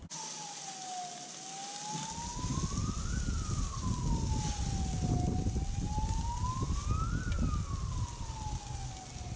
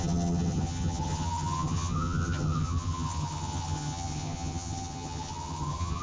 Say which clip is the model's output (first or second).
second